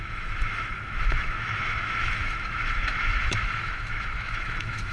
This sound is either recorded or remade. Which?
remade